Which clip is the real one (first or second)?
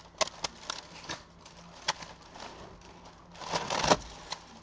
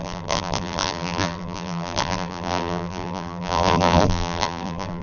first